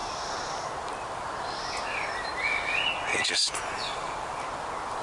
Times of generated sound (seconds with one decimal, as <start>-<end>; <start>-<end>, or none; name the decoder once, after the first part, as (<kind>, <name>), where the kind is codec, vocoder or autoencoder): none